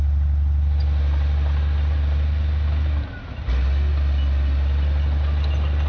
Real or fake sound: real